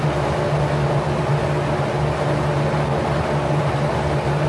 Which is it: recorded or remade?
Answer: recorded